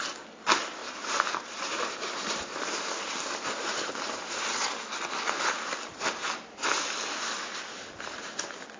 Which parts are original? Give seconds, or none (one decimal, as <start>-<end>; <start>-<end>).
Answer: 0.0-0.8; 4.3-8.8